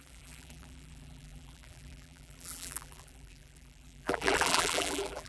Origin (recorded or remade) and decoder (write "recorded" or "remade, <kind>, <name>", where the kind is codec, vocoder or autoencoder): remade, vocoder, BigVGAN v2